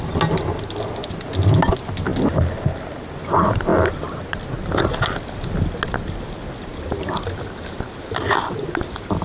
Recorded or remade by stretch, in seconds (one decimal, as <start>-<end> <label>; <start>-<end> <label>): 0.0-9.2 recorded